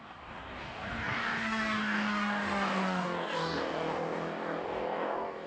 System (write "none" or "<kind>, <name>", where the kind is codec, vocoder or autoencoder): codec, DAC